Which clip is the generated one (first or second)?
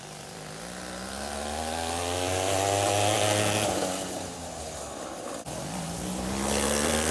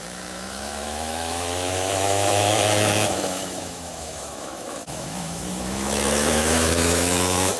second